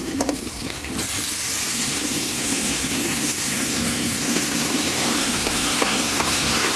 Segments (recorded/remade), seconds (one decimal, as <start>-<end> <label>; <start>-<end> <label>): 0.0-0.9 remade; 0.9-1.7 recorded; 1.7-6.8 remade